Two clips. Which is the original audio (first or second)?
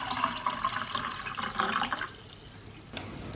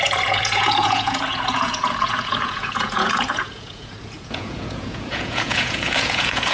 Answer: first